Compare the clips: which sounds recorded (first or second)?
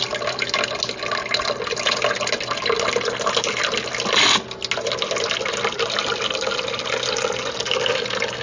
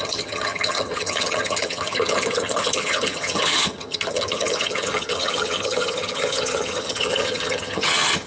first